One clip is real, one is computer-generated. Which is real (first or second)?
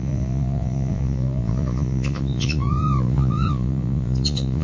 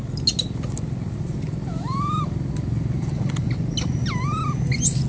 second